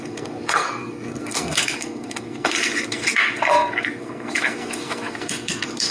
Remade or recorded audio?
remade